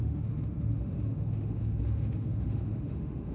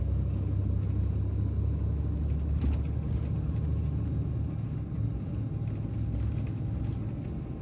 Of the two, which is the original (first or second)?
second